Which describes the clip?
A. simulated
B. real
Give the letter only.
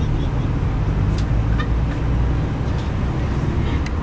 B